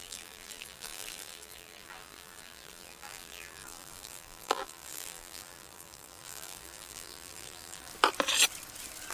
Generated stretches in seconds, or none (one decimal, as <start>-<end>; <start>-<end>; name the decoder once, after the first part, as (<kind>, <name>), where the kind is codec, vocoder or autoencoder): 0.0-7.9 (vocoder, BigVGAN v2)